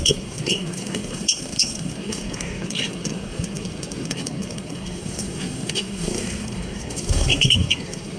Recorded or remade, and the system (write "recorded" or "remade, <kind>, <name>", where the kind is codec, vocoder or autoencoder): remade, codec, SNAC